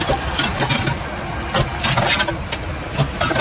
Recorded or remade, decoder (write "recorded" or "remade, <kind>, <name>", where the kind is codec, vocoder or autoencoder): recorded